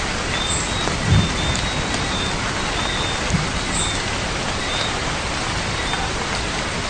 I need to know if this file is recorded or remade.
recorded